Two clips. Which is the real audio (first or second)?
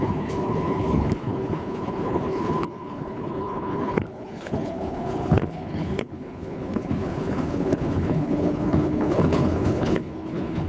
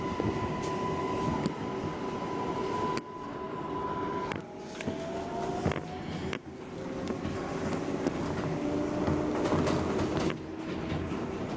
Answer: second